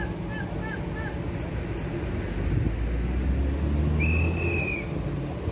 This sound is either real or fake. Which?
real